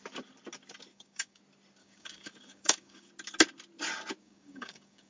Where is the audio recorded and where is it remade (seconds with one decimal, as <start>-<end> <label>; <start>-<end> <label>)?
0.0-0.9 recorded; 0.9-1.4 remade; 1.4-1.8 recorded; 1.8-3.1 remade; 3.1-4.2 recorded; 4.2-5.1 remade